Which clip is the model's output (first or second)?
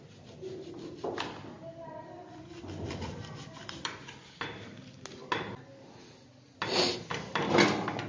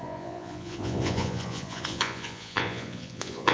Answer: second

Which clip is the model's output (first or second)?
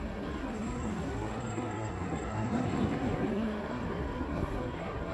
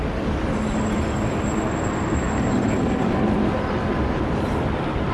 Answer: first